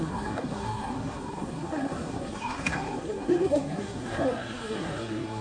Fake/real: fake